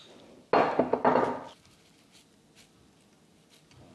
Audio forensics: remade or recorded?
recorded